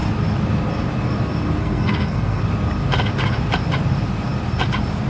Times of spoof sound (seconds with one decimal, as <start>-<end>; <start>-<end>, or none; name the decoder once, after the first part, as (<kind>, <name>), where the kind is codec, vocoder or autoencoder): 1.6-2.4 (codec, SNAC)